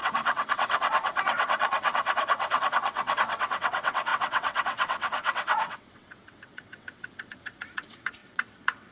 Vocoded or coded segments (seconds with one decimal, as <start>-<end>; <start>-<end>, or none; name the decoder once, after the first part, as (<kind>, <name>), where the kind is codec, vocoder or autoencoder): 0.0-8.9 (vocoder, WaveNeXt)